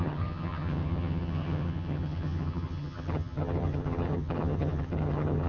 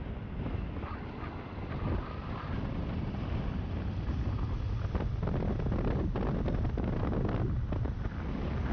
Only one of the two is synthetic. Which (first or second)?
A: first